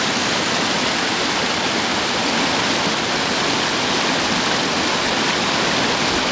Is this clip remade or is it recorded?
recorded